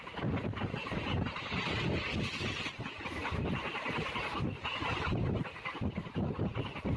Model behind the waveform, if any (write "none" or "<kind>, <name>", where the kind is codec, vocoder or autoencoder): none